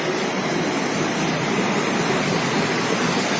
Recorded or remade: recorded